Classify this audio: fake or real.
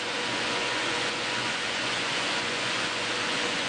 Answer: fake